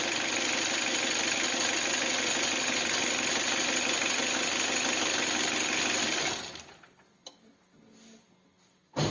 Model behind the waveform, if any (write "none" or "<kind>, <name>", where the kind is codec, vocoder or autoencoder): none